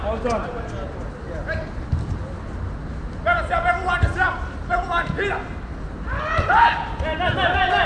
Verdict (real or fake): real